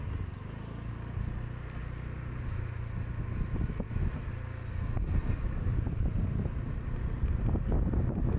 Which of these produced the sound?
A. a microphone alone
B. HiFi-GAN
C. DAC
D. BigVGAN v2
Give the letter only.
A